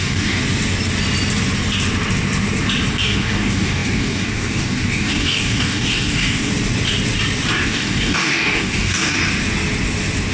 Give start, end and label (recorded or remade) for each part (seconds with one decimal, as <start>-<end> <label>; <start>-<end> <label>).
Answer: 0.0-0.4 remade; 0.4-2.9 recorded; 2.9-6.5 remade; 6.5-7.6 recorded; 7.6-9.1 remade; 9.1-10.3 recorded